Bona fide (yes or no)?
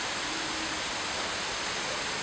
yes